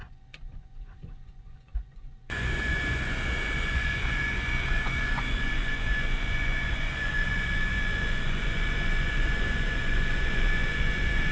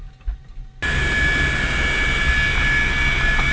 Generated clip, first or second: first